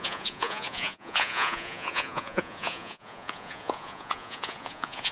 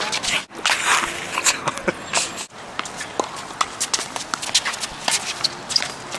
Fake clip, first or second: first